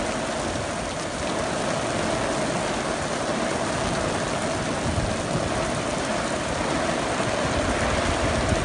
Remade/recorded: recorded